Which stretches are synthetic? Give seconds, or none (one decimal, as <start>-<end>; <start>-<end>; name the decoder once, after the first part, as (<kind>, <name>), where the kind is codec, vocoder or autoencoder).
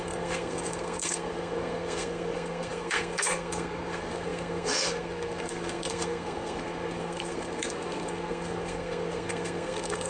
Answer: 0.0-10.1 (codec, SNAC)